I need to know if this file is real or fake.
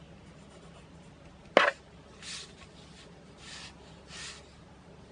real